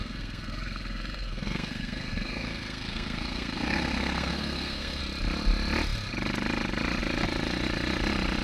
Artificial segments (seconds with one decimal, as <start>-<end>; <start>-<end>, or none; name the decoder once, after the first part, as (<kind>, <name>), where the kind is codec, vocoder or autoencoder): 0.0-5.0 (codec, SNAC)